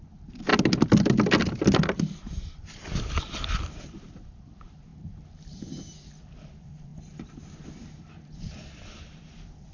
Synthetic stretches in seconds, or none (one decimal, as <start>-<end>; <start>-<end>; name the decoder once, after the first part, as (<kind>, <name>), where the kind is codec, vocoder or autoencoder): 0.0-0.5 (vocoder, BigVGAN v2); 3.0-4.9; 6.1-6.9; 8.4-9.7